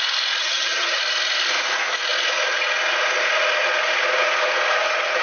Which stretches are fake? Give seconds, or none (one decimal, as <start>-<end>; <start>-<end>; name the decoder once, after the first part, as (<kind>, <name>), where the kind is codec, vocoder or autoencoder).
0.4-1.0 (vocoder, HiFi-GAN)